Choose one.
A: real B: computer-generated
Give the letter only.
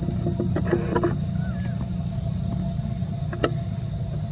A